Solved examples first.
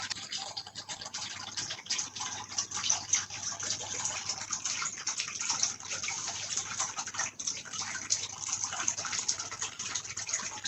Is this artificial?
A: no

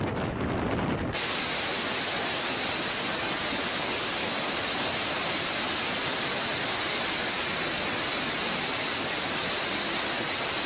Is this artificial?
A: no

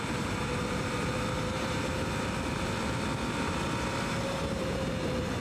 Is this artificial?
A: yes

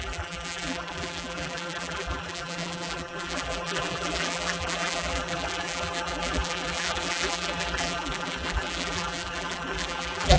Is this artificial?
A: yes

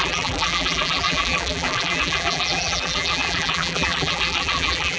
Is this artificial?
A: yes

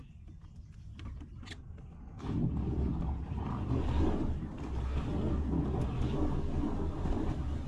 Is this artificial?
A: no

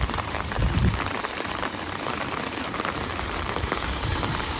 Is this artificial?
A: yes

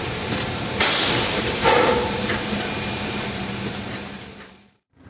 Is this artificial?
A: yes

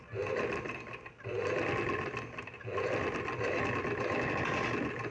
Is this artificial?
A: no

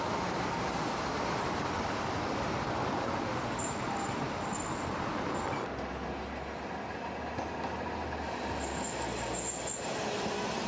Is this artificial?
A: no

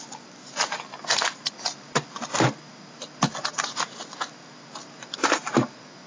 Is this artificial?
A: no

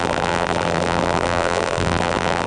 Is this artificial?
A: yes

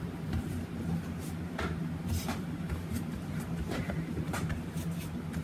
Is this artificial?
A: yes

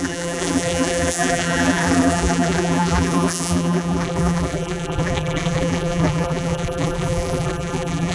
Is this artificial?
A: yes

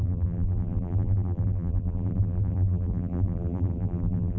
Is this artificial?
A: yes